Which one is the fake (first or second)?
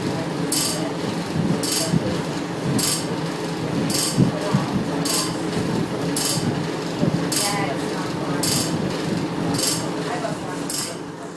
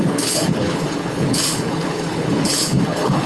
second